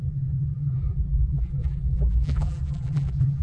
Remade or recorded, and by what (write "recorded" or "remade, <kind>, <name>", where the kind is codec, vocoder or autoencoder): remade, vocoder, BigVGAN v2